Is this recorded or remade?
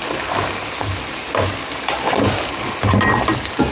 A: recorded